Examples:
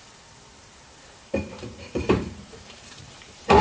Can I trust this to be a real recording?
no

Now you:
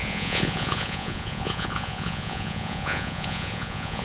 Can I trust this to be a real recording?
no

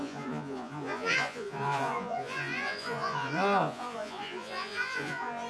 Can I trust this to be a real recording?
no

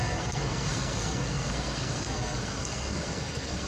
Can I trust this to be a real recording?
no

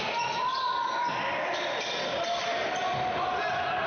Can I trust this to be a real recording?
yes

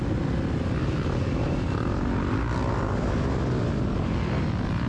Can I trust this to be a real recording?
yes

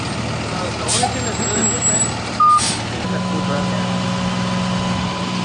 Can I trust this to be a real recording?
yes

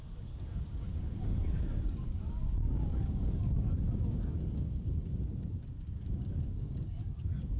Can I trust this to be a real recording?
no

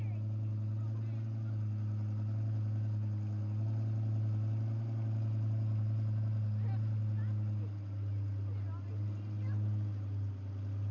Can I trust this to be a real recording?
yes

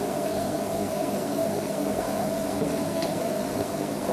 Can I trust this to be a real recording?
no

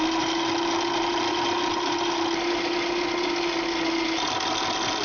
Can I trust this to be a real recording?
yes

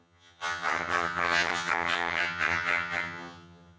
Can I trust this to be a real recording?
no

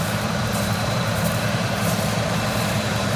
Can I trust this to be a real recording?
no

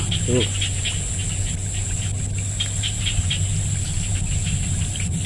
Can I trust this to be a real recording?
yes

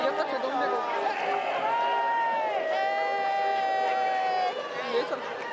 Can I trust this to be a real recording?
yes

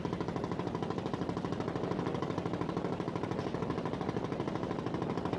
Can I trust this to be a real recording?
yes